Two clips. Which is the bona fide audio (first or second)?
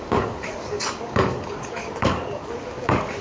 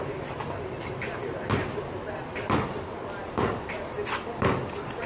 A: second